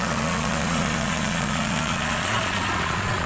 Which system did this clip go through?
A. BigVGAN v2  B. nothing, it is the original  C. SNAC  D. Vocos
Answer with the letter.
D